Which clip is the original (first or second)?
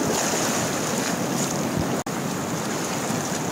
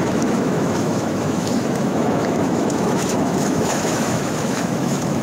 first